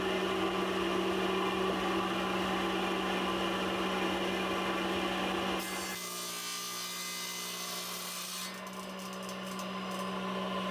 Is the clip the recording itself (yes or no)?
yes